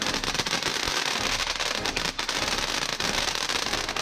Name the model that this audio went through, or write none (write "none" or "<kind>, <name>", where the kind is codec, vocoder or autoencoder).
none